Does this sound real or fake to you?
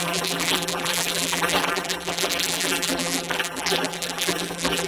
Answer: fake